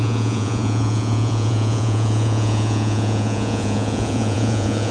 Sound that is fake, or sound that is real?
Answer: fake